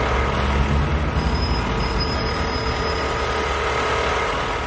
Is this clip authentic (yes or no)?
yes